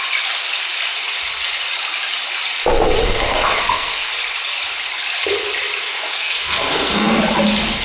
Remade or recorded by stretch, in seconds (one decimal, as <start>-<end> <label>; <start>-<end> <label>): 0.0-3.0 recorded; 3.0-4.1 remade; 4.1-5.8 recorded; 5.8-7.1 remade; 7.1-7.8 recorded